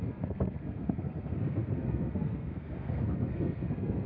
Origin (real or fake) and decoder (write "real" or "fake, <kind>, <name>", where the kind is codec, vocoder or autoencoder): fake, codec, SNAC